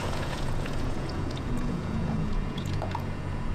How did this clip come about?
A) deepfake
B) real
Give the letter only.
A